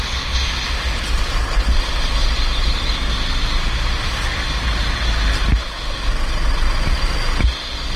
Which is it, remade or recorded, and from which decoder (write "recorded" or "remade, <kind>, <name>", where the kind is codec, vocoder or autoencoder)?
recorded